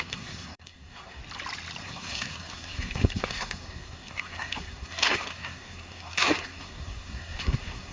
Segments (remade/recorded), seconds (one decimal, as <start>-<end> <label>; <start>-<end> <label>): 0.0-1.2 remade; 1.2-1.8 recorded; 1.8-7.9 remade